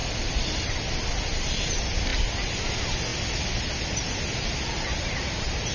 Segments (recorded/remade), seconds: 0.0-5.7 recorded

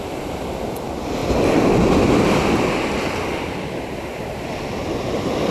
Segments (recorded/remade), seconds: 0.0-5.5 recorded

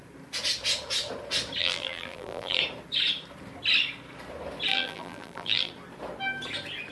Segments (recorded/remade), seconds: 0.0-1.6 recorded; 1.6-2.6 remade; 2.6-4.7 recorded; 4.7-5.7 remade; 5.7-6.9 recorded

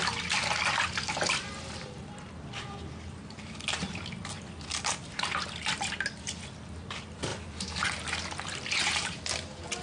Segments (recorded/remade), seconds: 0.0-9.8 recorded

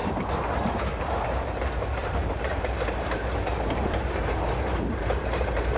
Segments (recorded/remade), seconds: 0.0-1.0 recorded; 1.0-5.8 remade

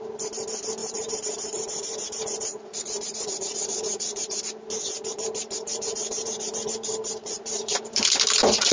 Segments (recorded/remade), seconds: 0.0-0.8 recorded; 0.8-4.4 remade; 4.4-5.1 recorded; 5.1-8.7 remade

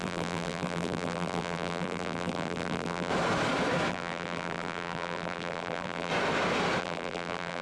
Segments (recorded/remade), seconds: 0.0-3.1 remade; 3.1-3.9 recorded; 3.9-6.1 remade; 6.1-6.8 recorded; 6.8-7.6 remade

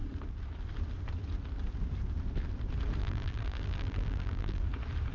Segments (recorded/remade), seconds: 0.0-3.0 recorded; 3.0-4.6 remade; 4.6-5.1 recorded